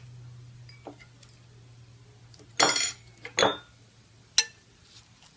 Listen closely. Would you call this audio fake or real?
real